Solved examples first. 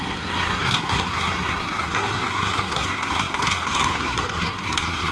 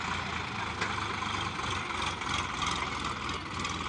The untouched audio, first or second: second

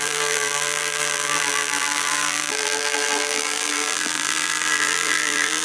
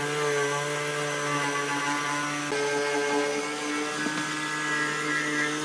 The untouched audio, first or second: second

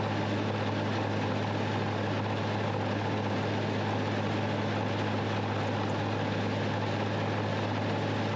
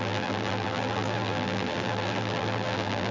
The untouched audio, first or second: first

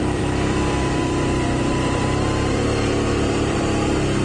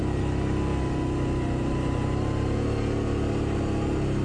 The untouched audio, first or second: second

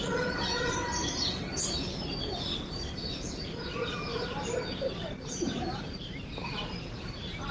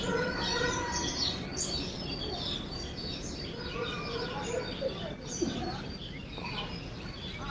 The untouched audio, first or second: second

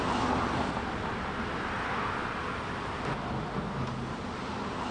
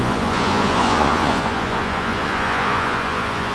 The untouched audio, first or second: first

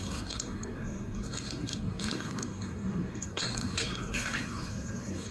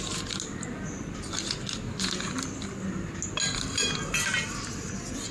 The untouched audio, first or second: second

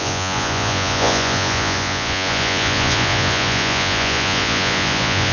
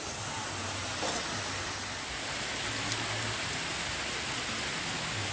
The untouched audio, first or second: second